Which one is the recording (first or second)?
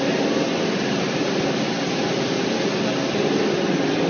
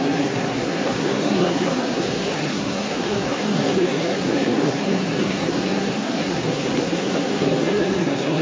first